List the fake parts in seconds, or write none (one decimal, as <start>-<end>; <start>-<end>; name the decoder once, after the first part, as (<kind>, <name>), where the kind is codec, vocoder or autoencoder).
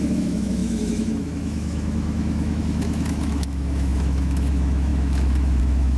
0.0-6.0 (autoencoder, DAC-VAE)